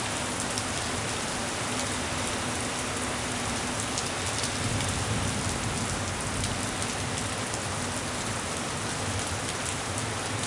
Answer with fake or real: real